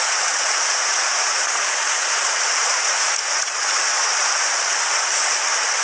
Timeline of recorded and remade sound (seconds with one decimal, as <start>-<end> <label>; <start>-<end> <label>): 0.0-4.1 remade; 4.1-5.8 recorded